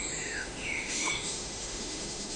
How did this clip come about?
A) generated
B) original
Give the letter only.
A